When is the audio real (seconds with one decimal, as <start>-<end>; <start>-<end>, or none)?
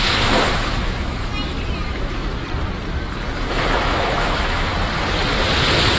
1.3-1.9; 2.3-3.5; 4.7-6.0